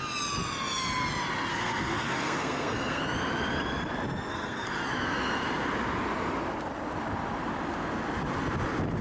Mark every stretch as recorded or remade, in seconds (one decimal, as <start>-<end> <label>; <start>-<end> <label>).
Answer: 0.0-1.5 recorded; 1.5-3.0 remade; 3.0-4.3 recorded; 4.3-4.8 remade; 4.8-9.0 recorded